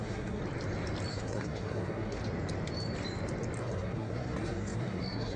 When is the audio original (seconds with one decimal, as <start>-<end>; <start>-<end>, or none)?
0.4-1.1; 2.2-3.6